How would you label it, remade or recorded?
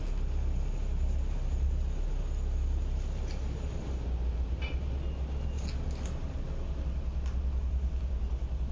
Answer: recorded